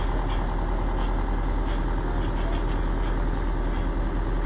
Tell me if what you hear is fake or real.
real